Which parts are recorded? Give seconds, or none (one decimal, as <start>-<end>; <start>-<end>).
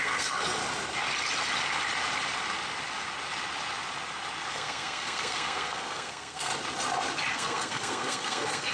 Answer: 0.6-4.5; 6.5-7.3